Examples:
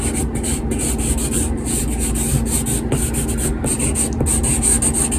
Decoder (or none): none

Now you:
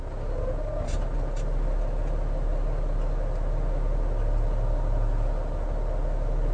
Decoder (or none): none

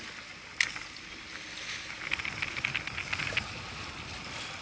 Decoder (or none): none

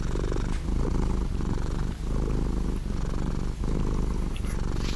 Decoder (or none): none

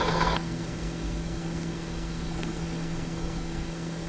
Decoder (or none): codec, SNAC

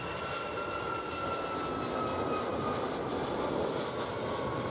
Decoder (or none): none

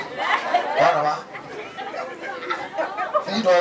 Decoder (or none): none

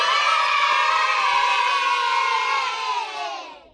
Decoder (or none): vocoder, BigVGAN v2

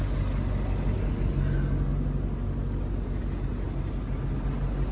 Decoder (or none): none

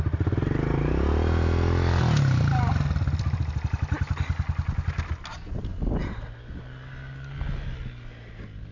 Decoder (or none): none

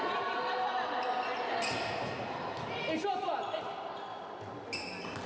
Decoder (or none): none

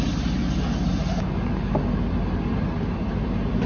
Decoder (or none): none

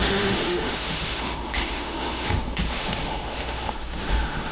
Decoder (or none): autoencoder, DAC-VAE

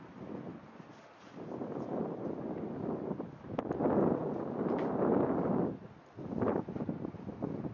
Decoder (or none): none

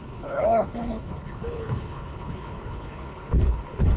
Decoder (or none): codec, HILCodec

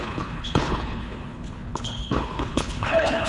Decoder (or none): codec, HILCodec